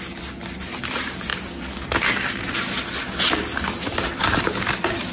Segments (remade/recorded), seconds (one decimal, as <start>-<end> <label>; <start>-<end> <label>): 0.0-5.1 recorded